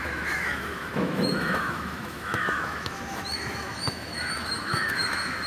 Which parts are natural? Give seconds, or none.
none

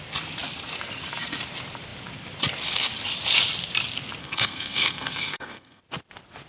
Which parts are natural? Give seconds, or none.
0.0-4.2; 5.8-6.5

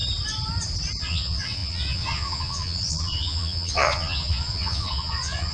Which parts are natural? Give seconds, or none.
0.0-1.0

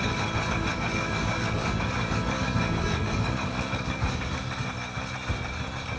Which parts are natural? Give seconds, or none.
0.0-0.7; 4.3-6.0